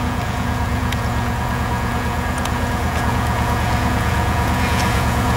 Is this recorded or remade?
remade